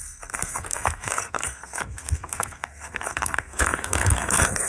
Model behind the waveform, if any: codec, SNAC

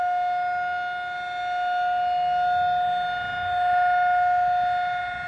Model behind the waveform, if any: none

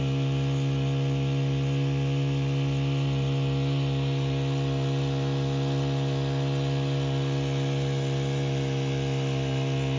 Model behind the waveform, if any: none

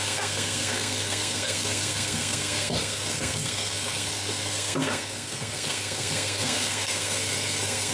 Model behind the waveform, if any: codec, SNAC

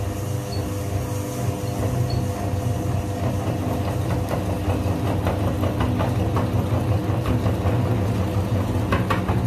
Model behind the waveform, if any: none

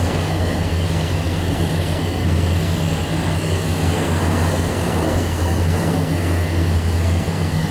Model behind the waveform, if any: codec, SNAC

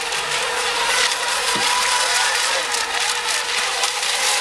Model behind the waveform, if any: none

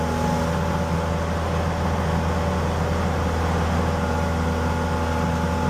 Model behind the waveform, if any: none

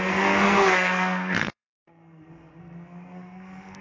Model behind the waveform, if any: codec, SNAC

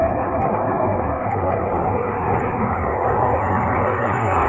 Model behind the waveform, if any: codec, SNAC